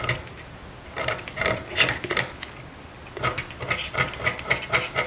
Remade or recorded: recorded